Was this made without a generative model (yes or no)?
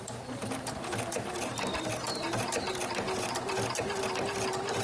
yes